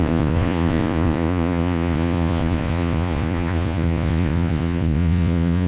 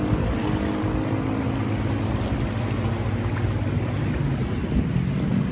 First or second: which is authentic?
second